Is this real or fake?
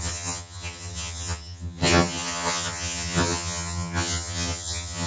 fake